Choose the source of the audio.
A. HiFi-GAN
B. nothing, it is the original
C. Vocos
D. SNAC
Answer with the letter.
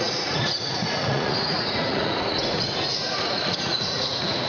C